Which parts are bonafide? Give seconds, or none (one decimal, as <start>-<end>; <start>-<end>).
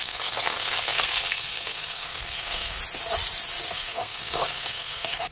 2.8-3.7